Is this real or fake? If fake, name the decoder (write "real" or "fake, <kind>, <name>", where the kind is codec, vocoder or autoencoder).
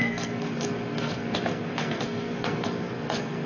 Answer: fake, codec, SNAC